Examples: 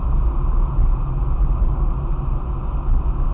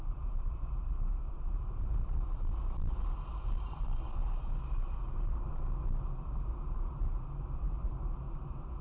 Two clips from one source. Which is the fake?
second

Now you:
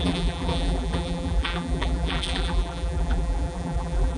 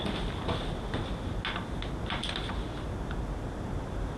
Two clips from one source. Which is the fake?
first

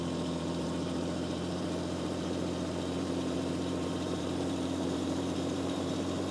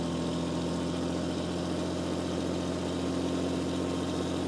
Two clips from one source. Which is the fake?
first